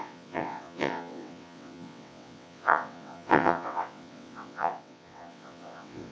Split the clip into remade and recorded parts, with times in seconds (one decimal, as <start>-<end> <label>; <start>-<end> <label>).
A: 0.0-6.1 remade